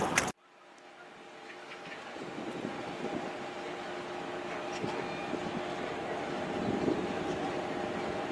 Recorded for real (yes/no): yes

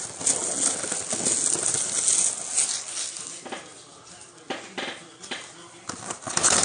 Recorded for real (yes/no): yes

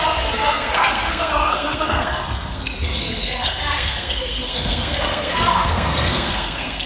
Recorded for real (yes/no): no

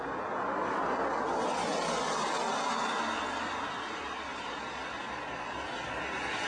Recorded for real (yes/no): yes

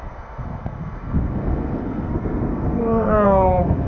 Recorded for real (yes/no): no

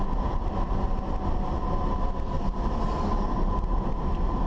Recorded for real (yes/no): yes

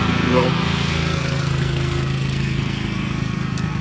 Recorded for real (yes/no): no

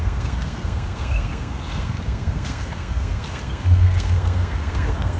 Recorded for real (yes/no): no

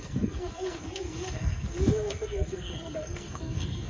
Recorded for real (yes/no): no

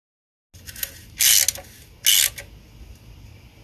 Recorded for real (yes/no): yes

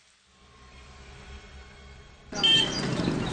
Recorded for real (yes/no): yes